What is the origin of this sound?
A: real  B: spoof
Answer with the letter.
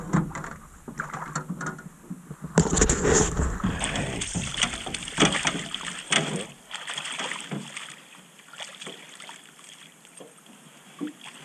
A